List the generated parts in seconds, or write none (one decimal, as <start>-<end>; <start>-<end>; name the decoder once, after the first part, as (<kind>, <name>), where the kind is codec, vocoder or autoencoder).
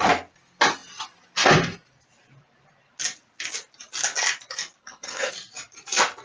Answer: 4.8-5.3 (codec, HILCodec)